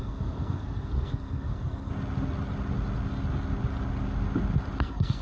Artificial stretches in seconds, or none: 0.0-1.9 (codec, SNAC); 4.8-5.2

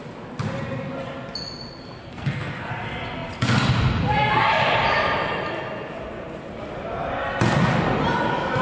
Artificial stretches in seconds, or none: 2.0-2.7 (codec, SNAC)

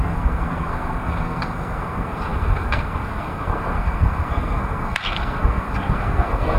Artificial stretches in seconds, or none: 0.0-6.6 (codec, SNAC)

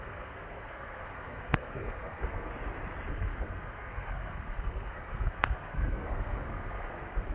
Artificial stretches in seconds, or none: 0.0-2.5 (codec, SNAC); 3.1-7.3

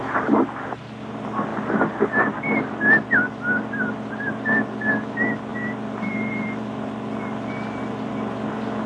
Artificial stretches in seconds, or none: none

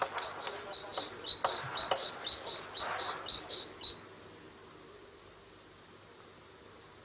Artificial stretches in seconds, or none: none

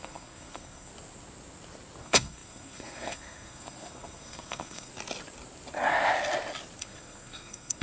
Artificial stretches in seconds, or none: 0.0-0.9 (codec, SNAC); 2.0-4.9; 6.8-7.8

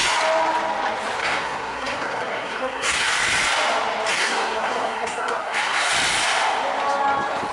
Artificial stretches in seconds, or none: 1.2-3.1 (codec, SNAC); 4.1-5.9